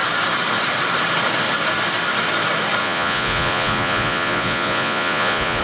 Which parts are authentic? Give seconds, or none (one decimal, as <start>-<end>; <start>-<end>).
0.0-2.8